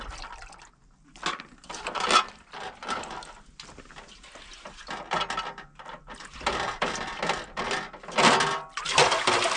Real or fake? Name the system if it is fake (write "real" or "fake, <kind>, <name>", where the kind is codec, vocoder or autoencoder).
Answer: real